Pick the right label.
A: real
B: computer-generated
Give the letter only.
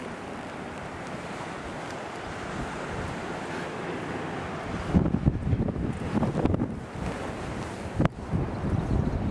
A